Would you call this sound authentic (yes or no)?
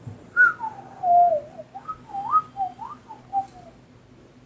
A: yes